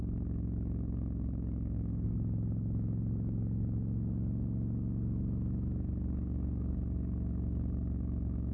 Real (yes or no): no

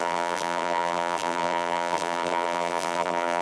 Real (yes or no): no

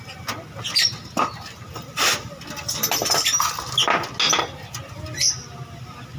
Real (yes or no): yes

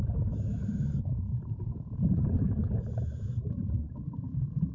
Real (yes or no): no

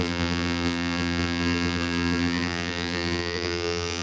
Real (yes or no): no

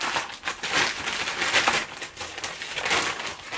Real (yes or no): yes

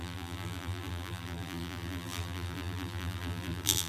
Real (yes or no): no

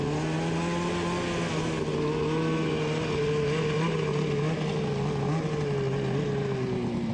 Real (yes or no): yes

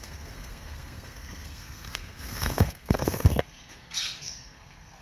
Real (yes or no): no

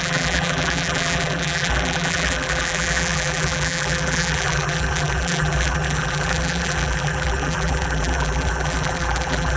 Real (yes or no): no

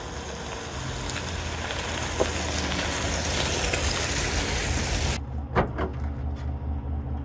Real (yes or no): yes